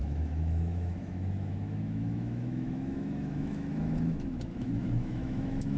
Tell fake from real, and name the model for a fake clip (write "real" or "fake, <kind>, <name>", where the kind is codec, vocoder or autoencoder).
fake, autoencoder, DAC-VAE